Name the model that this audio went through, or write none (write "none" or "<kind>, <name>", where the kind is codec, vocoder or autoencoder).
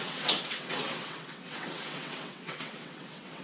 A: vocoder, WaveNeXt